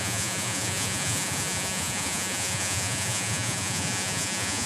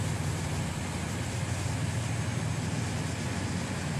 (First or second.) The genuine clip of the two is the second